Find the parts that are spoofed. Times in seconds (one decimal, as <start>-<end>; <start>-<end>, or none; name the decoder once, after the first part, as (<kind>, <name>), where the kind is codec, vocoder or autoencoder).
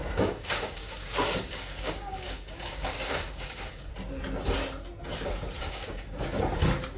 0.0-3.9 (codec, DAC); 5.6-6.2